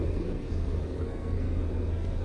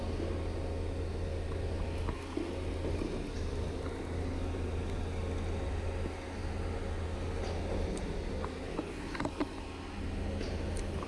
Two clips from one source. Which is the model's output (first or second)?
first